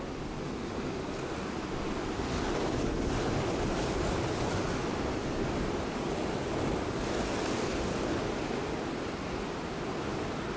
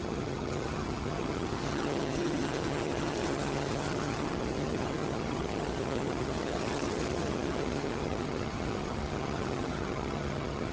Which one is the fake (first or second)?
second